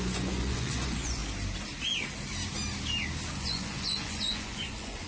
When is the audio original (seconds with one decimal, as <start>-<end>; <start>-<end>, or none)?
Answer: 1.2-3.3